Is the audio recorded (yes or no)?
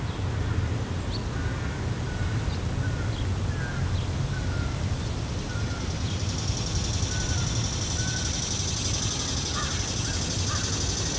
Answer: yes